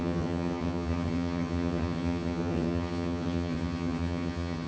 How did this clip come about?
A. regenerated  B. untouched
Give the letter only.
A